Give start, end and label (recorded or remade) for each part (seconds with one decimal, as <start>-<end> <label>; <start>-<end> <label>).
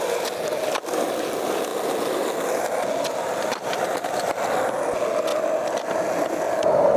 0.0-7.0 recorded